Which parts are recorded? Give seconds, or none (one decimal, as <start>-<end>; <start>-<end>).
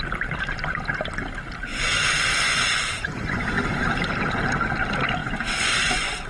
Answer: 0.0-1.7; 3.8-5.2